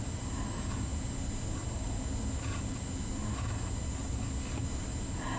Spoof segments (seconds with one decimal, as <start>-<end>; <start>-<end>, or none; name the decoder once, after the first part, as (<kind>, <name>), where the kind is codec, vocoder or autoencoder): none